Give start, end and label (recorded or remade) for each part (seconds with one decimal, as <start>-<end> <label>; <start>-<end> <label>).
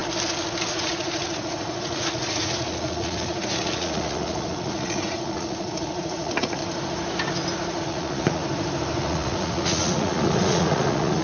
0.0-0.7 recorded; 0.7-6.6 remade; 6.6-7.8 recorded; 7.8-8.4 remade; 8.4-9.0 recorded; 9.0-11.2 remade